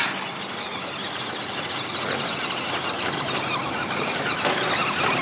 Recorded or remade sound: recorded